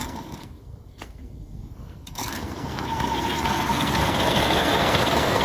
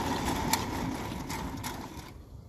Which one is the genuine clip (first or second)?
second